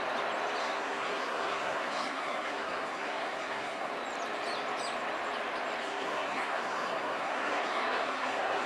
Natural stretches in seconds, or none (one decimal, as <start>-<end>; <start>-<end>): 0.0-0.6; 3.9-5.8